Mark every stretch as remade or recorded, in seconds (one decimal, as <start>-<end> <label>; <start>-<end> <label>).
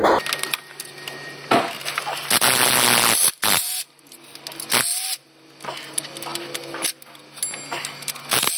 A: 0.0-8.6 recorded